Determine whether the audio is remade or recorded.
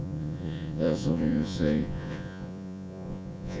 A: remade